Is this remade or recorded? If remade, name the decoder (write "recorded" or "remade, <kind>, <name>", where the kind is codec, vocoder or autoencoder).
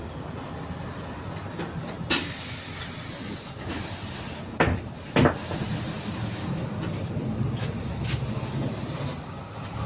recorded